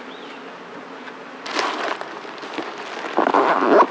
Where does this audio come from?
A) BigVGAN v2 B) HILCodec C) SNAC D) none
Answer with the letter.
D